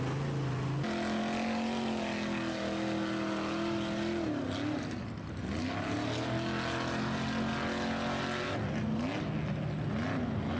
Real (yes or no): yes